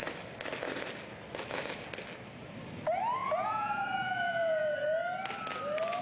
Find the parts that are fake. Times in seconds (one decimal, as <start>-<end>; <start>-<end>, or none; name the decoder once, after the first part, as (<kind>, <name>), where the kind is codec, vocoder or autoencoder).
3.2-4.7 (vocoder, Vocos)